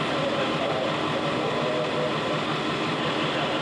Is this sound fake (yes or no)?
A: no